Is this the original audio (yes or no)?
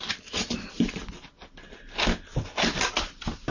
yes